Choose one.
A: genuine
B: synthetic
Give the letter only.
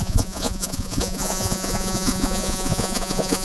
B